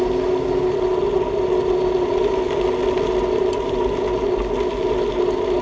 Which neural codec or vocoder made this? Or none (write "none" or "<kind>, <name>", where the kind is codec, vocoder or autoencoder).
none